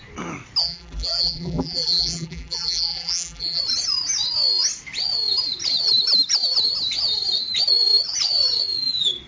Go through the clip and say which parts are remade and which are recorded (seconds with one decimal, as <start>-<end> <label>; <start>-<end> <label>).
0.0-0.6 recorded; 0.6-3.6 remade; 3.6-9.3 recorded